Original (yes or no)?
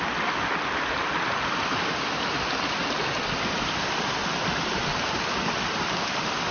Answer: yes